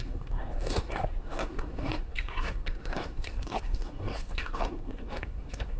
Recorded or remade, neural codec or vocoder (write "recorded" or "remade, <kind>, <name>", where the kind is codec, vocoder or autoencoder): remade, codec, SNAC